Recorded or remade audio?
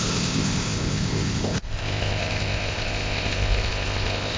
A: remade